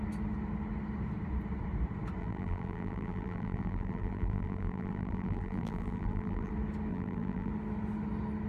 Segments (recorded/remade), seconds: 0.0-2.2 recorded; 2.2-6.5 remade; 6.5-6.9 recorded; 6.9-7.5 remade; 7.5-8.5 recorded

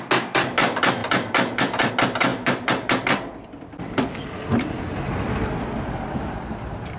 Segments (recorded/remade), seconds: 0.0-1.0 recorded; 1.0-1.9 remade; 1.9-2.3 recorded; 2.3-5.1 remade; 5.1-7.0 recorded

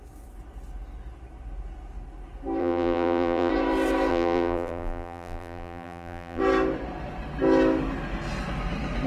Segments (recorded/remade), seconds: 0.0-2.6 recorded; 2.6-3.5 remade; 3.5-4.1 recorded; 4.1-6.4 remade; 6.4-9.1 recorded

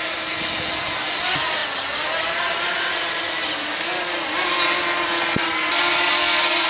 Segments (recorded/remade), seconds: 0.0-6.7 recorded

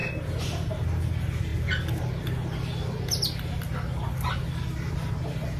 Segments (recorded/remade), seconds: 0.0-0.7 remade; 0.7-5.6 recorded

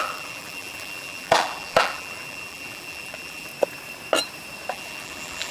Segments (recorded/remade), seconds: 0.0-3.5 remade; 3.5-4.7 recorded; 4.7-5.5 remade

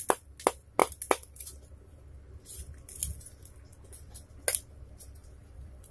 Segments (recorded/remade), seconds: 0.0-5.2 recorded; 5.2-5.9 remade

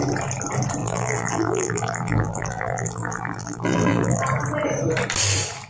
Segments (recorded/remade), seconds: 0.0-0.8 recorded; 0.8-4.2 remade; 4.2-5.7 recorded